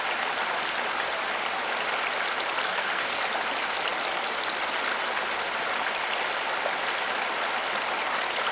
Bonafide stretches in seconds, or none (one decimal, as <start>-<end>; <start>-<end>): 0.0-2.7; 3.2-8.5